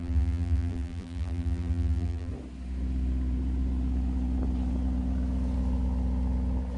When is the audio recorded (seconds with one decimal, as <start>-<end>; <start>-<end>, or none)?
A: 2.3-6.8